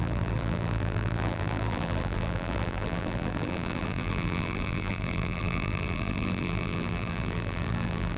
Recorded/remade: remade